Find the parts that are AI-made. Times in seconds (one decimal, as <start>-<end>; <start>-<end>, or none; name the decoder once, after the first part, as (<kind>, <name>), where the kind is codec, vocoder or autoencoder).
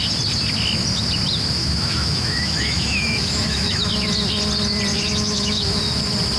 1.6-3.9 (autoencoder, DAC-VAE); 4.9-5.8